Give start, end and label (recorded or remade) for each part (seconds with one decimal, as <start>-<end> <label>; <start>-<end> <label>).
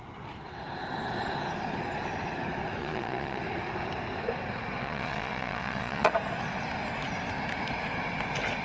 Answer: 0.0-2.8 recorded; 2.8-3.4 remade; 3.4-4.8 recorded; 4.8-6.1 remade; 6.1-8.6 recorded